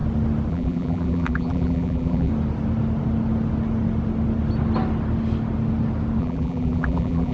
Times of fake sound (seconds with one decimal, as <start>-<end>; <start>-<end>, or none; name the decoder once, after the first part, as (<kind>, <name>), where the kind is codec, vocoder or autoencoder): 0.5-2.3 (vocoder, BigVGAN v2); 6.2-7.3